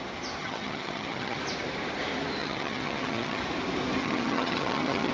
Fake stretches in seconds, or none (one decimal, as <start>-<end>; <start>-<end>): 0.4-1.4; 2.4-3.4; 4.0-5.1